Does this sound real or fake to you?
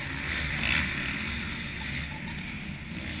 real